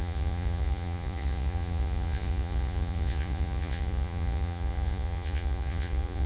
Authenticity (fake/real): fake